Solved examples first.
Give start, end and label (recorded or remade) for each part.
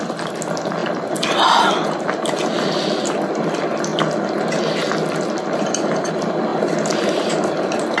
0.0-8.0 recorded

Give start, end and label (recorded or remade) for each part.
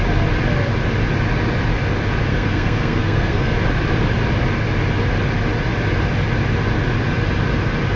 0.0-2.3 recorded; 2.3-3.5 remade; 3.5-8.0 recorded